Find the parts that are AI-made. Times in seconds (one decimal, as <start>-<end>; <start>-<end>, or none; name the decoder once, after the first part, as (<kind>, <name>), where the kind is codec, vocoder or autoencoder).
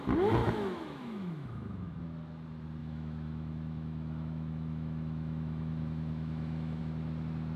0.4-2.0 (autoencoder, DAC-VAE); 2.8-6.8